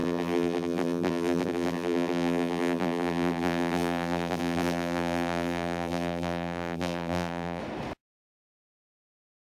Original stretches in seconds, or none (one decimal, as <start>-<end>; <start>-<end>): 7.6-9.5